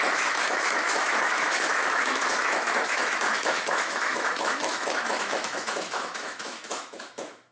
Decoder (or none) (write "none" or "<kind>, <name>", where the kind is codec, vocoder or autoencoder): autoencoder, DAC-VAE